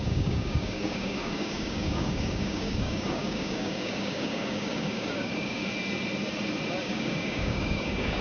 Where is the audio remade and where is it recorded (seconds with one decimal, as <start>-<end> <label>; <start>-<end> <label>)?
0.0-5.6 remade; 5.6-6.8 recorded; 6.8-8.2 remade